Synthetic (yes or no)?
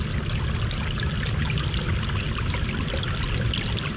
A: no